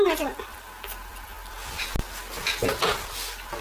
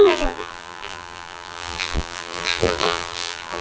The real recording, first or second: first